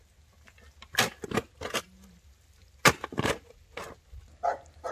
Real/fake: real